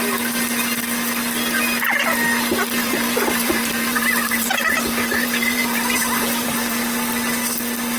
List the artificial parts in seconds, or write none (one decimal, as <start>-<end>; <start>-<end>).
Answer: 2.8-6.8